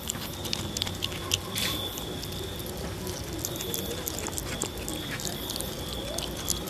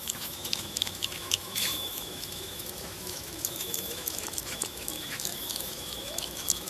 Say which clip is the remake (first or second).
second